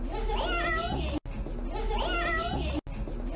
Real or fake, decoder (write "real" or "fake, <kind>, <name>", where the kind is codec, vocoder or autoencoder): real